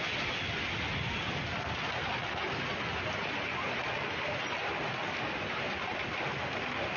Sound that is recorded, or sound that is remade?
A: recorded